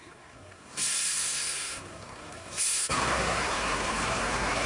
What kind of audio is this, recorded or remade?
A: remade